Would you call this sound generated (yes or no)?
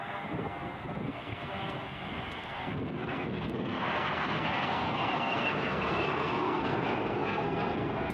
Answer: yes